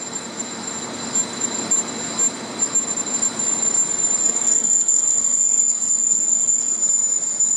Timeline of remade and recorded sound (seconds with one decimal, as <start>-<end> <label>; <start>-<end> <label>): 0.0-4.2 recorded; 4.2-6.8 remade; 6.8-7.6 recorded